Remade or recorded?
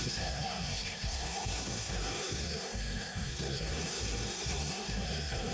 remade